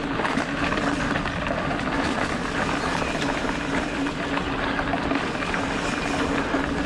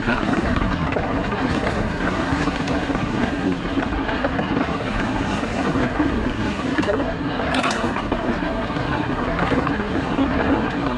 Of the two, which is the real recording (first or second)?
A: first